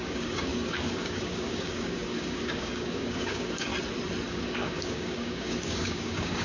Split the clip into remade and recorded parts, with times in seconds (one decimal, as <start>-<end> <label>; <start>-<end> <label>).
0.0-3.7 remade; 3.7-4.3 recorded; 4.3-6.4 remade